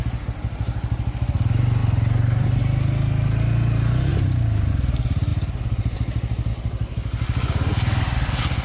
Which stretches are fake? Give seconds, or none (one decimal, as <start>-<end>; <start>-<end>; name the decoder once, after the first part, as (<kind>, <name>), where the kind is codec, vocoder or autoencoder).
1.8-2.6 (vocoder, BigVGAN v2)